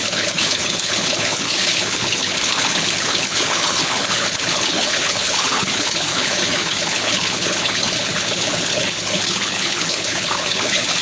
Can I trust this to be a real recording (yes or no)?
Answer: no